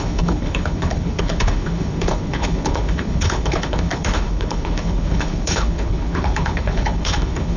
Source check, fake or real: fake